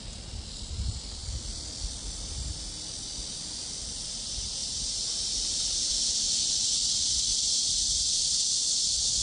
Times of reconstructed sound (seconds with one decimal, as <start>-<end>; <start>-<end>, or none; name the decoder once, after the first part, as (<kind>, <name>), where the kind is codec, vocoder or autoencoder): 4.6-6.4 (vocoder, BigVGAN v2); 7.3-8.4